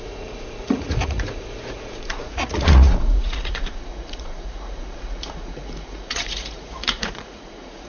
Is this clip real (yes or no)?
no